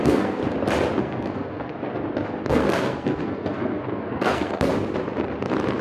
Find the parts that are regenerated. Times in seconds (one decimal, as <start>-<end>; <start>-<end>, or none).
0.0-0.4; 1.0-1.7; 2.5-4.7

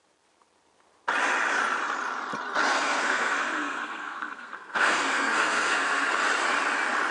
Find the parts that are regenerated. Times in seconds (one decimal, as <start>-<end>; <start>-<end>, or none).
2.7-6.1

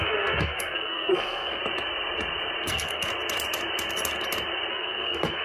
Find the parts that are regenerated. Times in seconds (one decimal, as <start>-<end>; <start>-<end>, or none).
0.0-1.6; 2.7-3.1; 4.7-5.4

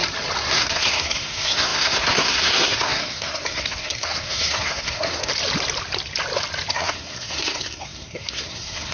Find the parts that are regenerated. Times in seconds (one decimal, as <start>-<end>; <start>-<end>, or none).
0.5-5.3; 6.7-8.9

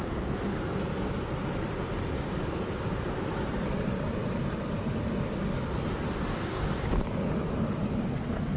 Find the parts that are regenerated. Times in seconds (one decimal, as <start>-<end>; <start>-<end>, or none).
none

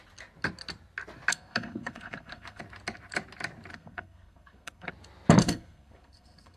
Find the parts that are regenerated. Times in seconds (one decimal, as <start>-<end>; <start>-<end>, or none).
1.3-2.6; 3.7-4.9; 5.4-6.6

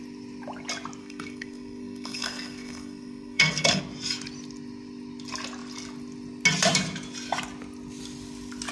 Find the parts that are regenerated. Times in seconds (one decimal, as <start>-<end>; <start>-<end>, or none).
1.0-3.8